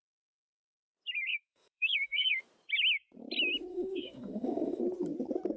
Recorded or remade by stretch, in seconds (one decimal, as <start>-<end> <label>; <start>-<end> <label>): 0.0-1.3 recorded; 1.3-2.4 remade; 2.4-3.7 recorded; 3.7-4.8 remade; 4.8-5.6 recorded